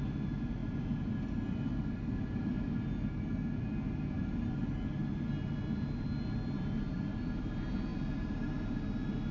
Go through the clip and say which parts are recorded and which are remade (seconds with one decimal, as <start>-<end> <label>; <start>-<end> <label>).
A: 0.0-9.3 recorded